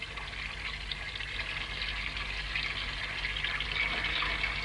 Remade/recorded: recorded